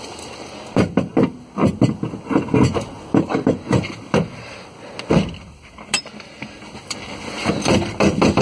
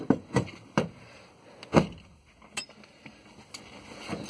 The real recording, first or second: first